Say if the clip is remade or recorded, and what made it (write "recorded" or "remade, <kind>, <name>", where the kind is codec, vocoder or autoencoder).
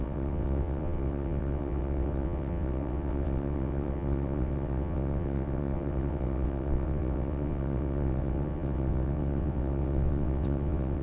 remade, vocoder, WaveNeXt